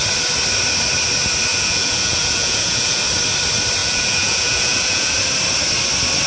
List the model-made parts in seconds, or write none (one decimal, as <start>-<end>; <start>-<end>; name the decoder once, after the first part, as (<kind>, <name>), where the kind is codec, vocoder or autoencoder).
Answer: 1.5-3.0 (vocoder, Vocos); 3.8-5.1